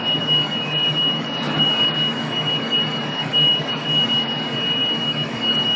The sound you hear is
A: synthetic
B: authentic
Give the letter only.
A